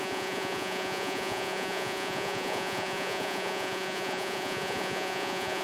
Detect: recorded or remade remade